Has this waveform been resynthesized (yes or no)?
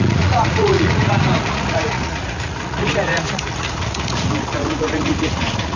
yes